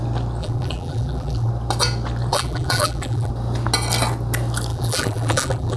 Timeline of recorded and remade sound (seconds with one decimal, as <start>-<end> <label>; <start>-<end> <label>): 0.0-0.4 recorded; 0.4-1.5 remade; 1.5-2.3 recorded; 2.3-3.3 remade; 3.3-4.7 recorded; 4.7-5.8 remade